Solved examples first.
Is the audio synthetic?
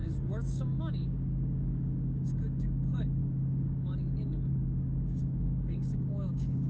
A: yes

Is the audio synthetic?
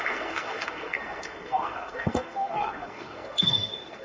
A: yes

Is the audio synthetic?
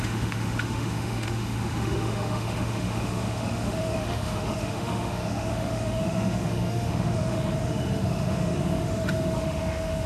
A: yes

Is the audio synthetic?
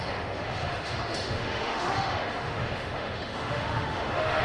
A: yes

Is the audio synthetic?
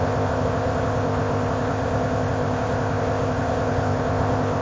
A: yes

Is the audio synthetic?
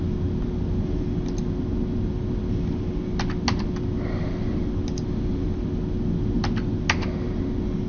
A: no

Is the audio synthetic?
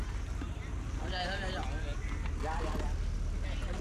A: no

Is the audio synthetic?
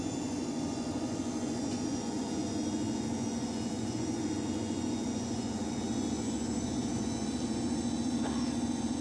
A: yes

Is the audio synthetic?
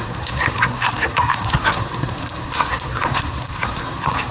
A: yes